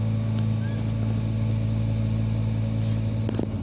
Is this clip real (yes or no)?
yes